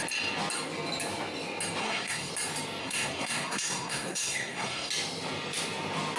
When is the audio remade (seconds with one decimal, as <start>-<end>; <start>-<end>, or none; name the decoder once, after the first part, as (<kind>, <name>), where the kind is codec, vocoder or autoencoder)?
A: 1.8-2.3 (codec, SNAC); 2.8-4.9